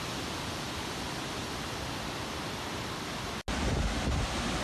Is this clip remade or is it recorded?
recorded